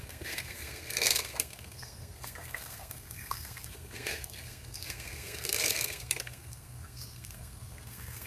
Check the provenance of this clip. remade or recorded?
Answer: remade